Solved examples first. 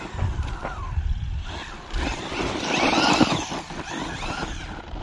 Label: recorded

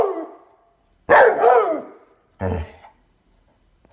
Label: recorded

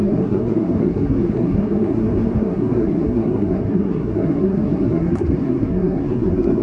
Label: remade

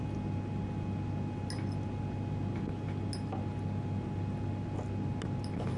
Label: recorded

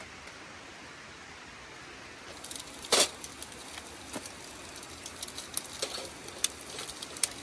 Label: recorded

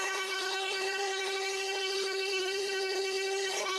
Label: remade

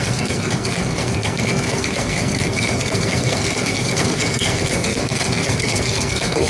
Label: remade